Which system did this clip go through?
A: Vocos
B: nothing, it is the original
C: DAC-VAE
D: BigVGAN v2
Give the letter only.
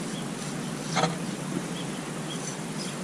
B